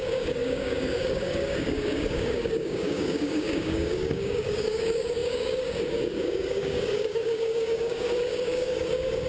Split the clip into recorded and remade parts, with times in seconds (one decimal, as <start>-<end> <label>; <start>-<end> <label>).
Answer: 0.0-9.3 remade